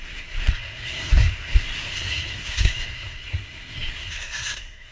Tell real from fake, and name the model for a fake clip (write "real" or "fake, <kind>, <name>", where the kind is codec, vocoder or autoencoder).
fake, codec, SNAC